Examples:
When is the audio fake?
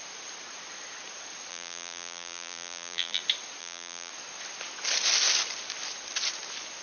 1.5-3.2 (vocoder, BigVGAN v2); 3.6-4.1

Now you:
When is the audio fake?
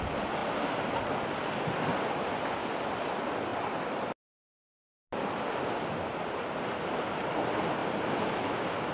none